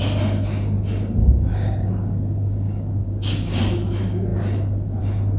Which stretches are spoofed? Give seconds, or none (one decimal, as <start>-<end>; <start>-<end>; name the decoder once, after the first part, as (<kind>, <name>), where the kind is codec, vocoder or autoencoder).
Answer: 1.2-3.6 (codec, DAC)